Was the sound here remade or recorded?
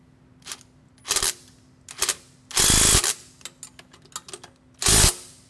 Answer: recorded